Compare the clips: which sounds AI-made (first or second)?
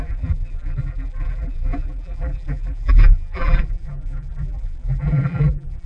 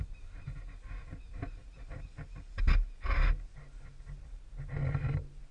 first